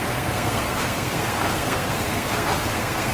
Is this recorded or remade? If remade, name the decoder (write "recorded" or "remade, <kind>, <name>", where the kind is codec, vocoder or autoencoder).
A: remade, codec, SNAC